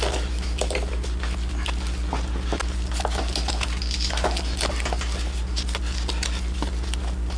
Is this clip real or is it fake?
real